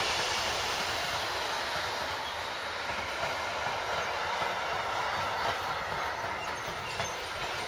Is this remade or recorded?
recorded